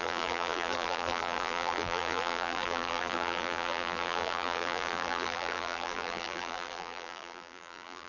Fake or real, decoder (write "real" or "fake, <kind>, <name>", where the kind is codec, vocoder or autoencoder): fake, vocoder, BigVGAN v2